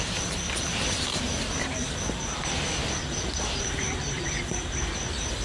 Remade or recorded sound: remade